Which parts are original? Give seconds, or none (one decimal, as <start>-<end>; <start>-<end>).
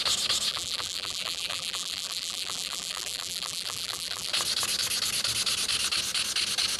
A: 0.0-0.5; 4.3-6.8